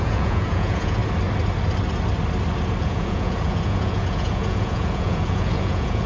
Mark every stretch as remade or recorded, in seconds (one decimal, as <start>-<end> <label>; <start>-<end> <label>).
0.0-1.0 remade; 1.0-2.8 recorded; 2.8-6.1 remade